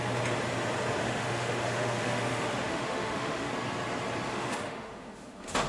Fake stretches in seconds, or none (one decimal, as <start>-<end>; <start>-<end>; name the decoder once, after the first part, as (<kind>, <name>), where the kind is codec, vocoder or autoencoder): 1.0-3.5 (autoencoder, DAC-VAE); 4.3-5.7